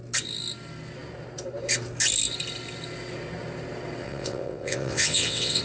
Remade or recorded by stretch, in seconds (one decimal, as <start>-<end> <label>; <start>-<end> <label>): 0.0-4.0 recorded; 4.0-5.6 remade